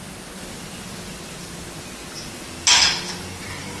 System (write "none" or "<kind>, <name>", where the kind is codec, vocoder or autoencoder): none